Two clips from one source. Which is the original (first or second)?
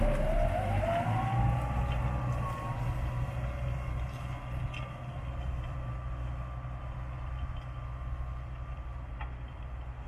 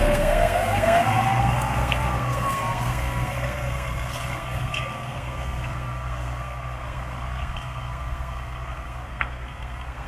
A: first